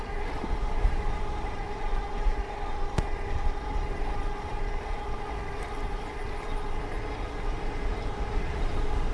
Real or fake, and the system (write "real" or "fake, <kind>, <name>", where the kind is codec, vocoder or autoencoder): real